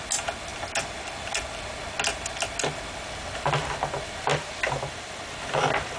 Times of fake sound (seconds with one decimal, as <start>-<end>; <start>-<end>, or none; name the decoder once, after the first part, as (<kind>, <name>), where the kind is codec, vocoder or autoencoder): none